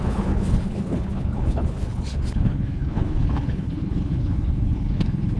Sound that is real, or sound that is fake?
fake